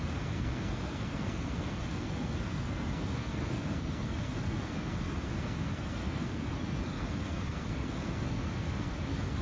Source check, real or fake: fake